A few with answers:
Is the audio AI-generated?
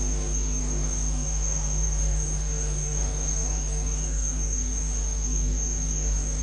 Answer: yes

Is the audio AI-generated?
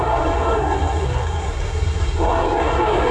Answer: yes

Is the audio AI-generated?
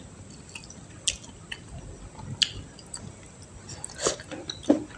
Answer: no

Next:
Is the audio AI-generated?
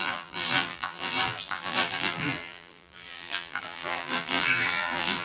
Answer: yes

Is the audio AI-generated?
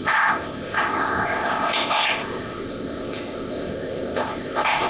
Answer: yes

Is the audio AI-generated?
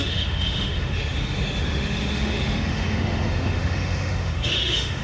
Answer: yes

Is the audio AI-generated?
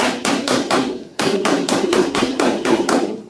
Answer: yes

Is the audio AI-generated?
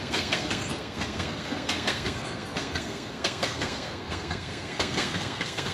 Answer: yes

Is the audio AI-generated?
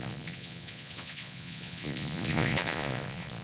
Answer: yes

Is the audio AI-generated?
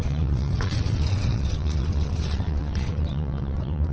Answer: yes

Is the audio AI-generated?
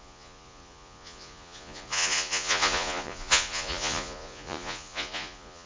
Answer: yes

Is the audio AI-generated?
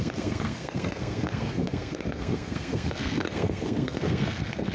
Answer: yes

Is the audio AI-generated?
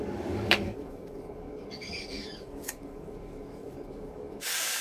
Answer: yes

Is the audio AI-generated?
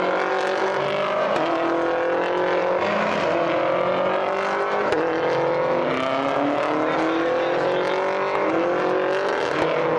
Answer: no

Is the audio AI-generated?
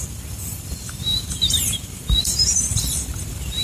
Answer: yes